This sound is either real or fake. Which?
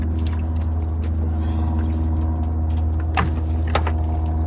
real